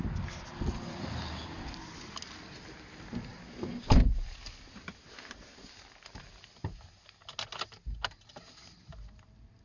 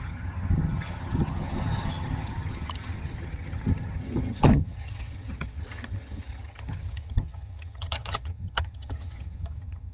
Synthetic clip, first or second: second